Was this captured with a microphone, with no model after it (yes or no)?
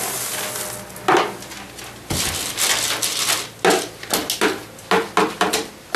yes